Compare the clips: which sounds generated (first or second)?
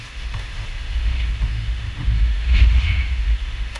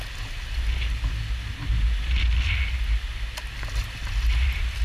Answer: first